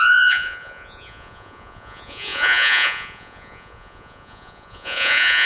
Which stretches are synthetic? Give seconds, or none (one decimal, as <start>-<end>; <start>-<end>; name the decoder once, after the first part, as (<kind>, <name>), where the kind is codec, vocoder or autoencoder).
0.0-5.5 (vocoder, Vocos)